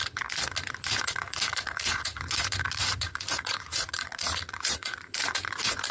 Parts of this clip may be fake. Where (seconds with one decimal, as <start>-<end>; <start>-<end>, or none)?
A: 0.9-5.9